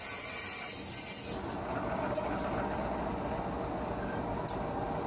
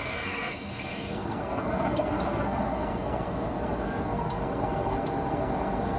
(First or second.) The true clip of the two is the first